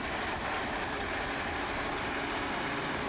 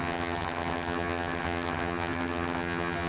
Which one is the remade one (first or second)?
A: second